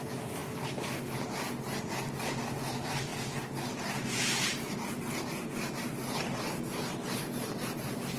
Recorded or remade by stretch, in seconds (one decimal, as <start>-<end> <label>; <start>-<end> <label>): 0.0-8.2 recorded